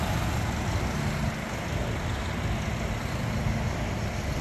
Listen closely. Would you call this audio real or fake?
real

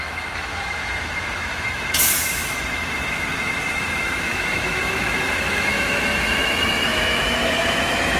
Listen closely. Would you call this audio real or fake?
fake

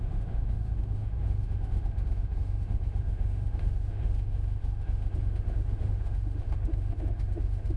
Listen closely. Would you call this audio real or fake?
fake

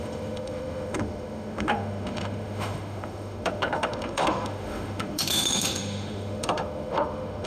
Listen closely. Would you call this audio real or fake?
fake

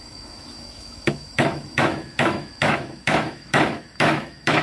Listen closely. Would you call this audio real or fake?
fake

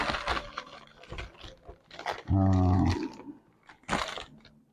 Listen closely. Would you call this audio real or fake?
real